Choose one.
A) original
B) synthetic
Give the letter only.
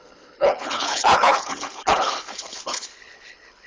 B